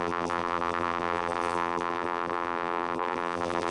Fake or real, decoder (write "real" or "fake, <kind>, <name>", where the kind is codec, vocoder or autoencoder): fake, vocoder, BigVGAN v2